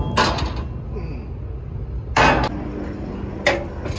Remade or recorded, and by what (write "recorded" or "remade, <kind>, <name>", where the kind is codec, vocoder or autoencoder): recorded